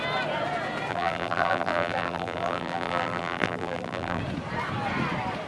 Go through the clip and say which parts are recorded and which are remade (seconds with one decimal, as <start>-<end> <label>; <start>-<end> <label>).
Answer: 0.0-0.9 recorded; 0.9-4.2 remade; 4.2-5.5 recorded